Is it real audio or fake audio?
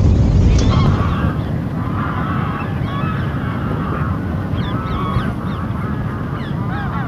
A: real